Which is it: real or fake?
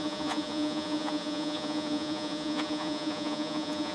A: fake